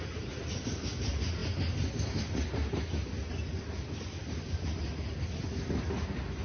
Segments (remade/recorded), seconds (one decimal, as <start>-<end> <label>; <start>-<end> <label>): 0.0-6.4 recorded